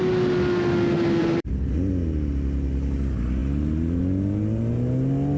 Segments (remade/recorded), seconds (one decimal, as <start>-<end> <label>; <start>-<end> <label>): 0.0-1.2 recorded; 1.2-1.9 remade; 1.9-5.4 recorded